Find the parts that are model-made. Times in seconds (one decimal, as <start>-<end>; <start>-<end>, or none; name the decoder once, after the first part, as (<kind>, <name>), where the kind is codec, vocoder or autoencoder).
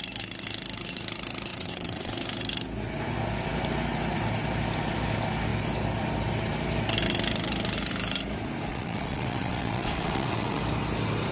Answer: 1.5-2.1 (vocoder, WaveNeXt); 8.7-10.6